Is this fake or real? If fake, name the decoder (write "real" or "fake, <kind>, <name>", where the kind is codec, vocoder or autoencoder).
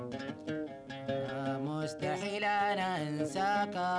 real